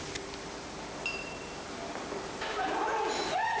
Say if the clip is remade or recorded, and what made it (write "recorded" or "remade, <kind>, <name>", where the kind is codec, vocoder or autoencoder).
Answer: recorded